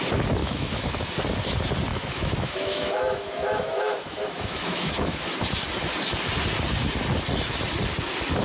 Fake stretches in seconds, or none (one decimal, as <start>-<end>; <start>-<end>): 0.4-1.1; 1.9-5.2